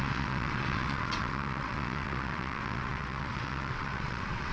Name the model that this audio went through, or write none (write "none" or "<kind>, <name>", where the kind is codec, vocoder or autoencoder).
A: vocoder, WaveNeXt